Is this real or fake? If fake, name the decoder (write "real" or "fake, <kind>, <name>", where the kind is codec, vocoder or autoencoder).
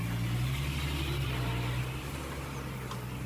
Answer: real